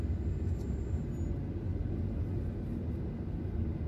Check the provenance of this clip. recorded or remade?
recorded